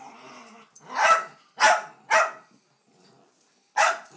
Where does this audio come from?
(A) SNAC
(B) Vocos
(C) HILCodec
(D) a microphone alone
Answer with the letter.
D